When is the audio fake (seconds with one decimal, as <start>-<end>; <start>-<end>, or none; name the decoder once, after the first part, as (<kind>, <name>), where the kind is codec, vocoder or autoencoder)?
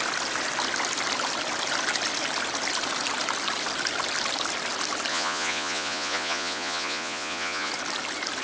5.1-7.7 (vocoder, Vocos)